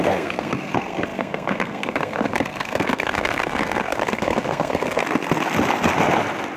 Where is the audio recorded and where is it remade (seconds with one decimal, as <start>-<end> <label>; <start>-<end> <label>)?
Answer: 0.0-5.0 remade; 5.0-6.6 recorded